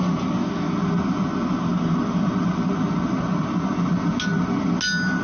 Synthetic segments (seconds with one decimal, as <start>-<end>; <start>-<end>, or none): none